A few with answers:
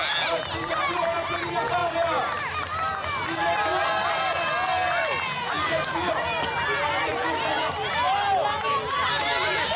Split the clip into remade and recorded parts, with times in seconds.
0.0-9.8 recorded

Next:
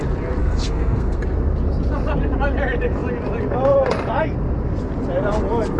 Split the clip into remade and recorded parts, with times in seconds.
0.0-0.4 recorded; 0.4-1.2 remade; 1.2-5.8 recorded